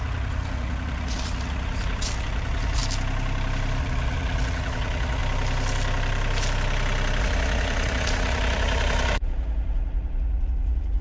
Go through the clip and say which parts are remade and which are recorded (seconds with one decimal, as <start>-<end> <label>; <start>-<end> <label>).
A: 0.0-2.8 remade; 2.8-3.8 recorded; 3.8-5.2 remade; 5.2-7.2 recorded; 7.2-11.0 remade